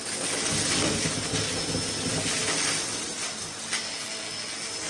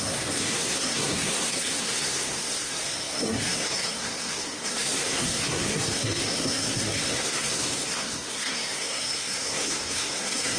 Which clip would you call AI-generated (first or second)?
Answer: second